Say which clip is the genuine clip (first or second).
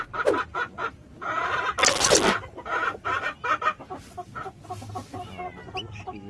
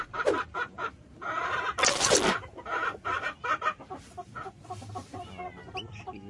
first